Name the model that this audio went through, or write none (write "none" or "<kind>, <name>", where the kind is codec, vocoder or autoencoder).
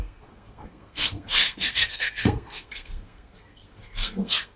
codec, SNAC